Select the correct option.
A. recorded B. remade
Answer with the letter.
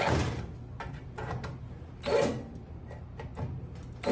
A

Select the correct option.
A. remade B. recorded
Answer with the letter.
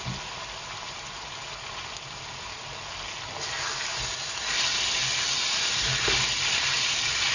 B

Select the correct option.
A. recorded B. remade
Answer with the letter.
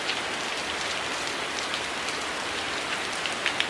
A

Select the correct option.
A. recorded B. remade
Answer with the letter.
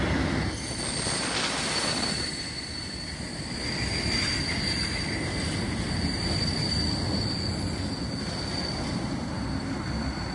A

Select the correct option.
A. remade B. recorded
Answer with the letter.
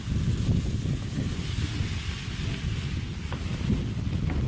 B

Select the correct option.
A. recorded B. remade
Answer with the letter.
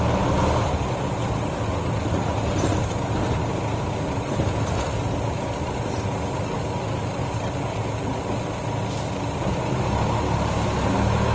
A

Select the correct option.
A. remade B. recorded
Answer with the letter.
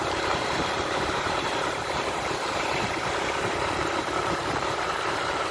A